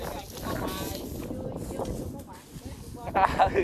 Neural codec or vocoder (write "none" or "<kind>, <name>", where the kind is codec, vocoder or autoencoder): none